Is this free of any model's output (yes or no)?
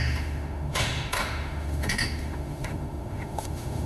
no